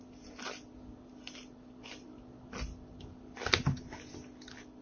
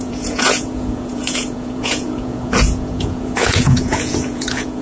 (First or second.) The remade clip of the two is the second